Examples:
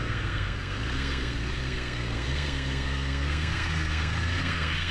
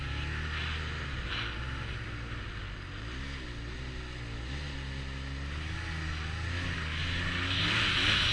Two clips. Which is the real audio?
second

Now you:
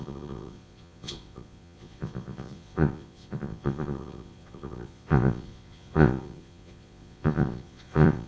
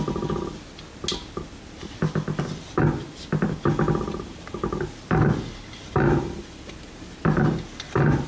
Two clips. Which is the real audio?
second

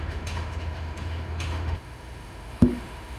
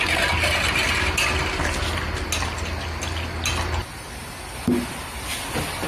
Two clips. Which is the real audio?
second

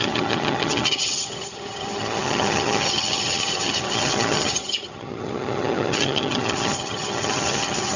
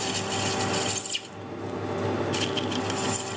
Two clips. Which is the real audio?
second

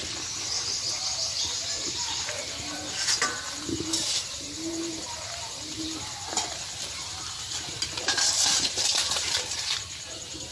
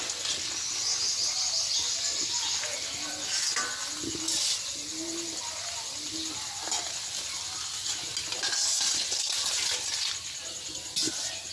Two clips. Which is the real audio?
second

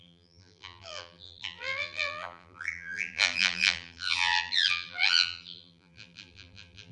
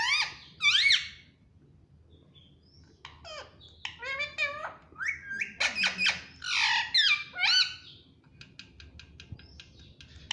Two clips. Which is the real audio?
second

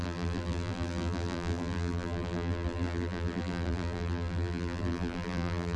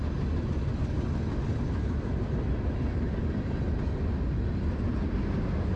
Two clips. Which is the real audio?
second